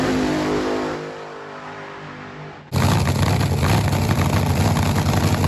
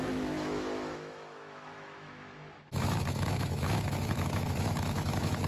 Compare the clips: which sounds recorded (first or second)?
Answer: first